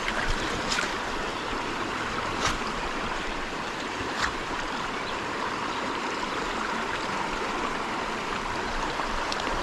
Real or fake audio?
fake